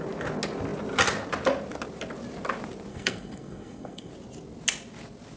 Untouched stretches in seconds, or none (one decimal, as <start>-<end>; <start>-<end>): 0.0-2.9; 4.1-5.4